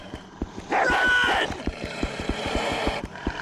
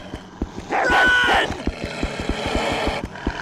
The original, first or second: second